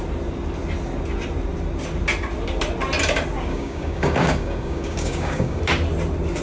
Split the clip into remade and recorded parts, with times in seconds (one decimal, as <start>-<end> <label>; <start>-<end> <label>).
0.0-3.5 recorded; 3.5-5.6 remade; 5.6-6.4 recorded